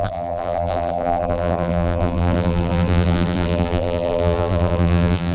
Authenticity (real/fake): fake